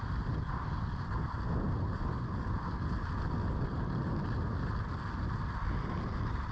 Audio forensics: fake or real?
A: real